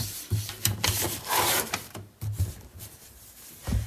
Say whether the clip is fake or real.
fake